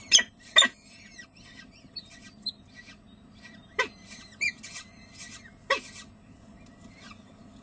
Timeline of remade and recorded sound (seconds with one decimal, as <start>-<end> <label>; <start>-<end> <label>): 0.0-7.6 recorded